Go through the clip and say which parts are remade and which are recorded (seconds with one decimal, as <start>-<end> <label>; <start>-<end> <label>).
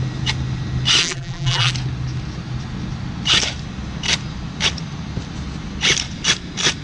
0.0-1.0 recorded; 1.0-1.7 remade; 1.7-6.8 recorded